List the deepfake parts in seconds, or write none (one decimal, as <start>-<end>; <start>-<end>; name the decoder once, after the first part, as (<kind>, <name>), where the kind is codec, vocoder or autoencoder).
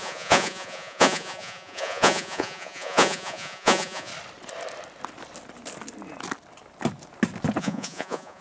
0.0-4.1 (vocoder, Vocos); 7.6-8.4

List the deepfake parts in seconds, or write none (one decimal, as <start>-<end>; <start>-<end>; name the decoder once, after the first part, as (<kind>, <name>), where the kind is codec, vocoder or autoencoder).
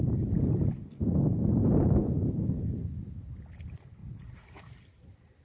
4.0-4.6 (vocoder, Vocos)